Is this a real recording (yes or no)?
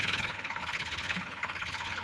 no